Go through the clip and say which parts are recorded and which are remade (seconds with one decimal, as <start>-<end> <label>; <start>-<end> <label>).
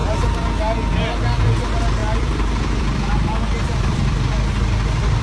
0.0-2.0 recorded; 2.0-5.2 remade